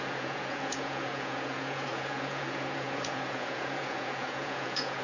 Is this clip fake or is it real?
fake